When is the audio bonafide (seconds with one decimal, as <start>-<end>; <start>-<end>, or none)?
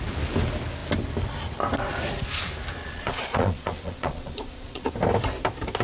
0.0-2.8; 4.9-5.8